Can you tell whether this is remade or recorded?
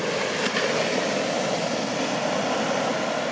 recorded